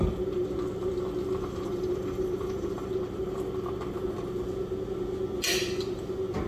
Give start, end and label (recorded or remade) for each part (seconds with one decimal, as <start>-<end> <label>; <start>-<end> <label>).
0.0-1.4 recorded; 1.4-2.9 remade; 2.9-6.5 recorded